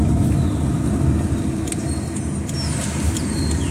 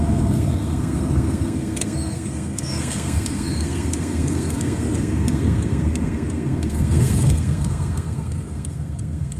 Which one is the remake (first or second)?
second